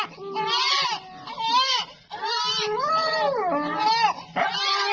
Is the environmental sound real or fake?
real